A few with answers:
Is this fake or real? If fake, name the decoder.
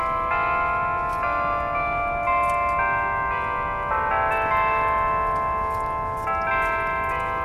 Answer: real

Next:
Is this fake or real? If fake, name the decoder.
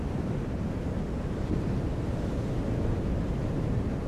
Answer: fake, vocoder, BigVGAN v2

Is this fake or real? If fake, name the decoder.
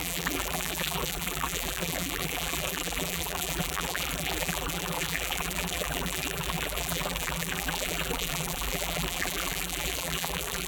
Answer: fake, vocoder, BigVGAN v2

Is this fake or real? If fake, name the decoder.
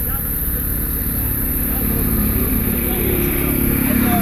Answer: fake, vocoder, BigVGAN v2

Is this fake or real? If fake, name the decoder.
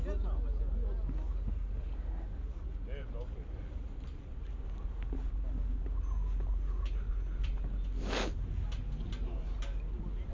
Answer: real